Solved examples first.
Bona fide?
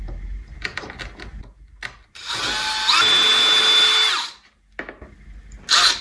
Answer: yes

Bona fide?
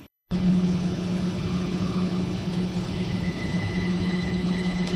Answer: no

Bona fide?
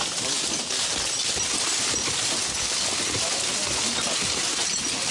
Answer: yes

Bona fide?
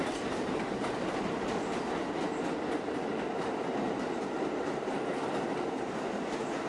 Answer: yes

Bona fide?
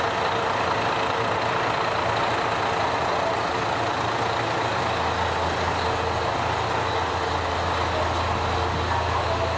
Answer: yes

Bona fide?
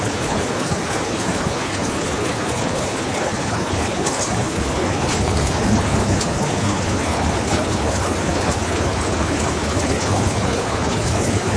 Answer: no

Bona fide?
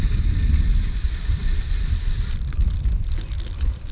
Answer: yes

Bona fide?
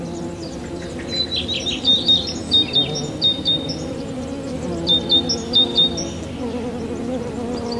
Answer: yes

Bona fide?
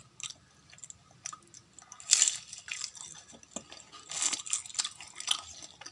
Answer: yes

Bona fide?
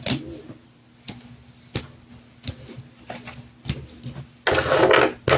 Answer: yes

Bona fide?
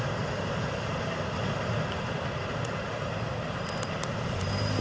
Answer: yes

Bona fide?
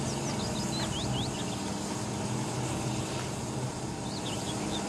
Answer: yes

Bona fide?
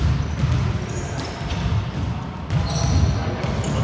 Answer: yes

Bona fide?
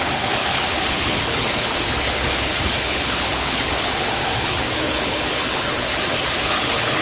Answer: no